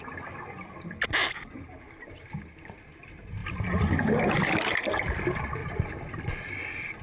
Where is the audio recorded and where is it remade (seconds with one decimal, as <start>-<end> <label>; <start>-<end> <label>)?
0.0-1.2 recorded; 1.2-2.4 remade; 2.4-3.4 recorded; 3.4-4.3 remade; 4.3-5.6 recorded; 5.6-6.6 remade; 6.6-7.0 recorded

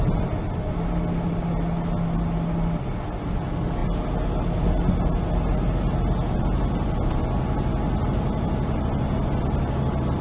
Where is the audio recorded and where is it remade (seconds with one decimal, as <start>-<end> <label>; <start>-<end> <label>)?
0.0-10.2 recorded

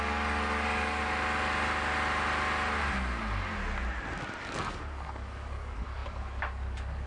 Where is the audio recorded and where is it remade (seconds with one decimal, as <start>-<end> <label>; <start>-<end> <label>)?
0.0-1.0 remade; 1.0-4.4 recorded; 4.4-7.1 remade

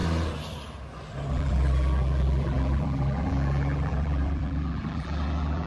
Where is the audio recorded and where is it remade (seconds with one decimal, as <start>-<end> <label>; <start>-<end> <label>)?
0.0-1.3 recorded; 1.3-5.7 remade

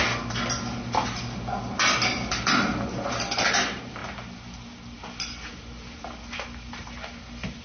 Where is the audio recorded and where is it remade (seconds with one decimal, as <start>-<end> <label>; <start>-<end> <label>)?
0.0-7.6 recorded

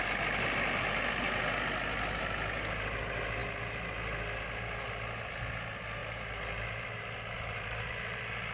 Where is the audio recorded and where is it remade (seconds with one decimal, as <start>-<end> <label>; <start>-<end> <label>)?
0.0-8.5 recorded